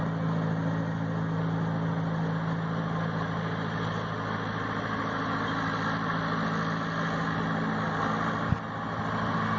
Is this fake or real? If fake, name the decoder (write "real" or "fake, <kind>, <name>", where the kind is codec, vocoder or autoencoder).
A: real